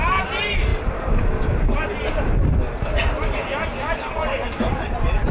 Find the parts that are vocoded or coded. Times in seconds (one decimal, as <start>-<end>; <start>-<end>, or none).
none